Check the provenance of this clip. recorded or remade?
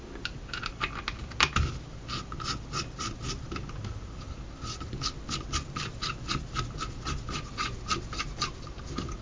recorded